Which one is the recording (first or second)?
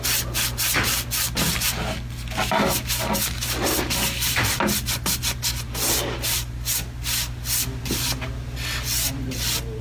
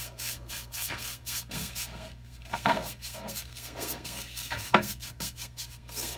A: first